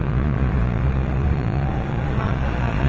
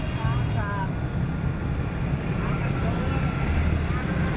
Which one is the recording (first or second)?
second